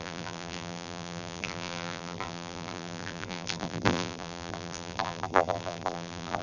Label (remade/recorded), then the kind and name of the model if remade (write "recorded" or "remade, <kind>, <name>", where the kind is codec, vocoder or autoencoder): remade, vocoder, BigVGAN v2